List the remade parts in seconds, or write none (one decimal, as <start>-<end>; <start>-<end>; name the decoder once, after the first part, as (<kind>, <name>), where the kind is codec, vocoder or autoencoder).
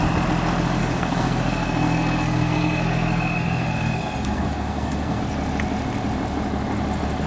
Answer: 0.8-5.2 (codec, SNAC)